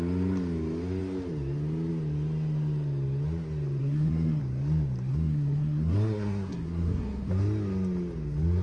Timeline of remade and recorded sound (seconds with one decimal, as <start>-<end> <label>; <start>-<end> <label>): 0.0-3.8 recorded; 3.8-4.4 remade; 4.4-5.1 recorded; 5.1-7.3 remade; 7.3-8.6 recorded